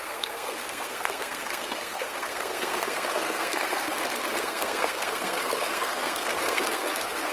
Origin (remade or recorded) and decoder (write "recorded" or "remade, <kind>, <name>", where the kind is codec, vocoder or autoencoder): remade, codec, SNAC